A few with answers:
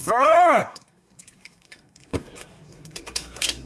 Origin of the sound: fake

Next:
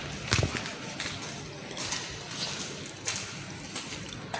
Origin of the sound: real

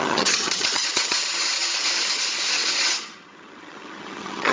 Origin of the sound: fake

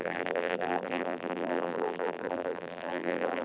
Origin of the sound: fake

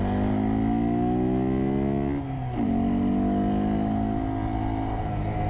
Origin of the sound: real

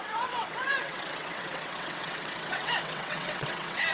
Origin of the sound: fake